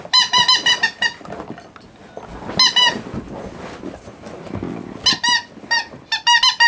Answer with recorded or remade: recorded